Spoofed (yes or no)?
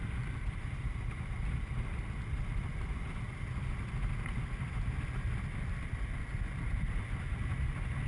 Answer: no